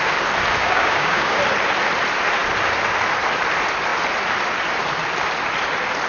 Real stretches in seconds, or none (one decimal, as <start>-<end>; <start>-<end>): 0.0-0.6; 1.4-6.1